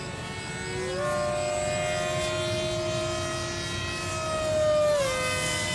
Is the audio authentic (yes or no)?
yes